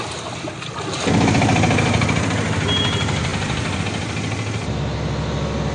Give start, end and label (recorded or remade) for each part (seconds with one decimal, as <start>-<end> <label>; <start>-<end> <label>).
0.0-3.3 recorded; 3.3-3.8 remade; 3.8-5.7 recorded